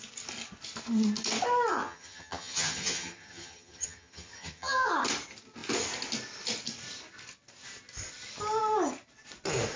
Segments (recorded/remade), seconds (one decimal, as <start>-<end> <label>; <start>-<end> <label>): 0.0-1.7 recorded; 1.7-4.9 remade; 4.9-9.8 recorded